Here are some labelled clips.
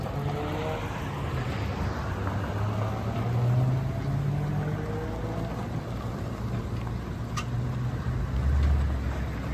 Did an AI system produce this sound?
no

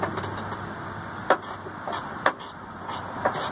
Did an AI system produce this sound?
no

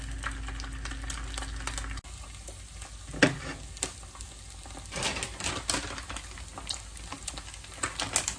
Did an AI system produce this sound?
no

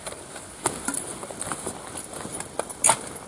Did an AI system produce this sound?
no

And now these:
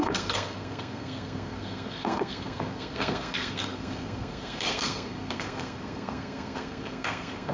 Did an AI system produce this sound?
yes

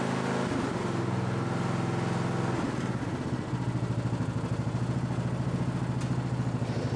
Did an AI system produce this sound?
no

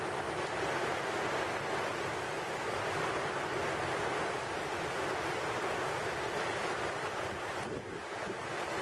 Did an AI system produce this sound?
no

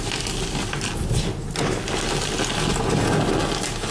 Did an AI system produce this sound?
no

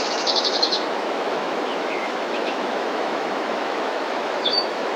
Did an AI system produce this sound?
yes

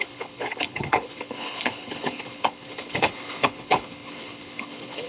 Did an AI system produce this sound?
yes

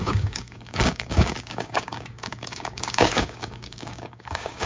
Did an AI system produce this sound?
yes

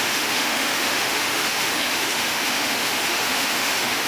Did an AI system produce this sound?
yes